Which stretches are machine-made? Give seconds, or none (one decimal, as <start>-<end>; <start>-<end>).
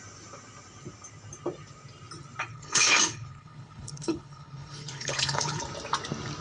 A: 2.5-5.6